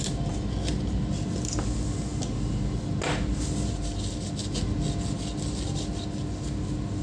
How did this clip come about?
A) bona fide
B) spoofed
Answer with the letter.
A